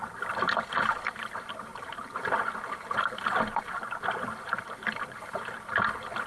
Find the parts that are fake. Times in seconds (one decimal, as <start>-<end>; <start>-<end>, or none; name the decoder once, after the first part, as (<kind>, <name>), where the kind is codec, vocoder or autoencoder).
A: none